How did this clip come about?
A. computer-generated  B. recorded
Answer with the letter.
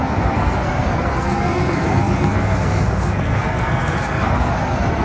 A